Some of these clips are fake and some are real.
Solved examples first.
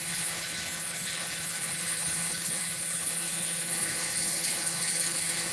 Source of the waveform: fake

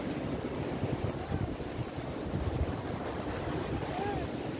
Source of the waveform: real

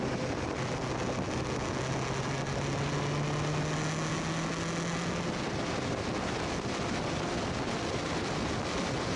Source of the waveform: real